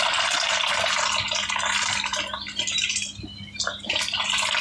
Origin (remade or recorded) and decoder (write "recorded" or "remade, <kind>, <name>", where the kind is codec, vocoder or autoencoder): recorded